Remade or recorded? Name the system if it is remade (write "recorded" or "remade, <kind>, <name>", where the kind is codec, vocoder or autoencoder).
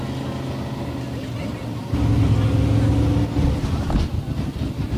recorded